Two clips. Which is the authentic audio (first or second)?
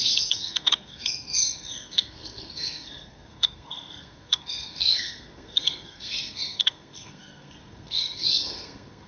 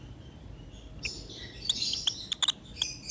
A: second